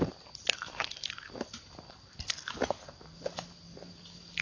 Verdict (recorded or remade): recorded